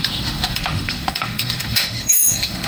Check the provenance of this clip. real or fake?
fake